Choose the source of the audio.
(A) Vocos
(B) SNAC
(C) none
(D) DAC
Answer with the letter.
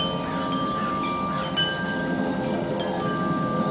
C